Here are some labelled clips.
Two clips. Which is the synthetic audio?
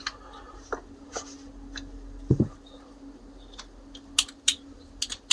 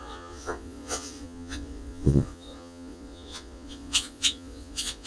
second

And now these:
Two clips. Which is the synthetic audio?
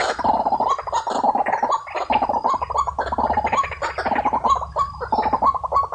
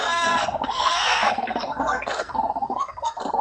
second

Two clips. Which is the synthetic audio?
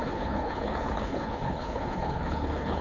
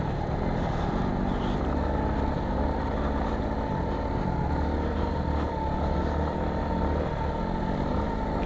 first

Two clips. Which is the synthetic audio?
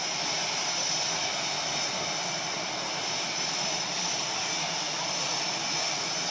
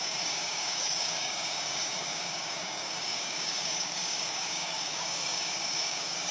second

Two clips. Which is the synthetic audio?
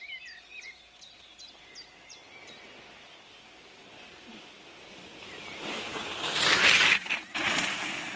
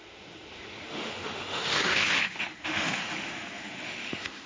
second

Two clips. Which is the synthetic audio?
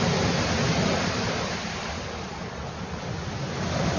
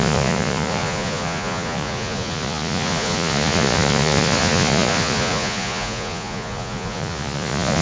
second